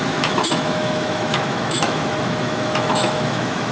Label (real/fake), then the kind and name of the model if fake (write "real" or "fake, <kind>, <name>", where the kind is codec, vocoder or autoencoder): fake, autoencoder, DAC-VAE